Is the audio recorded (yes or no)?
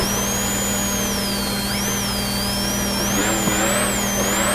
yes